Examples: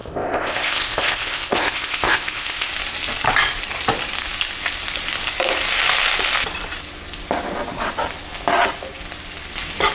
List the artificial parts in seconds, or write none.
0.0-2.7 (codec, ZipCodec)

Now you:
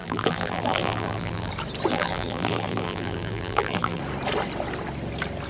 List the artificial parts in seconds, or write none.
0.0-1.5 (vocoder, BigVGAN v2); 1.9-4.0

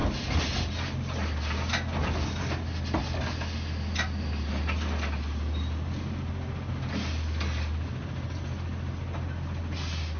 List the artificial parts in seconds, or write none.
none

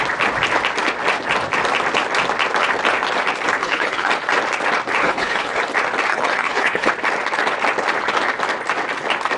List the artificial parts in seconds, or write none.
3.6-4.1 (codec, HILCodec); 5.0-5.6; 6.1-6.9

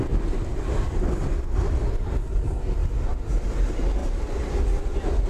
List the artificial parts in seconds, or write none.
4.0-4.5 (vocoder, BigVGAN v2)